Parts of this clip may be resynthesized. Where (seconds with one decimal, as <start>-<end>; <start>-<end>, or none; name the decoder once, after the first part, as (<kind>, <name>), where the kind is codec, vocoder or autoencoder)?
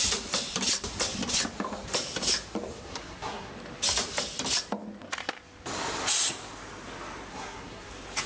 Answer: 2.7-3.5 (codec, SNAC); 7.3-7.9